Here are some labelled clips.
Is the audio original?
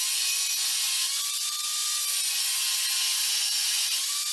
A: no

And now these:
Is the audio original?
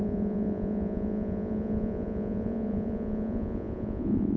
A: no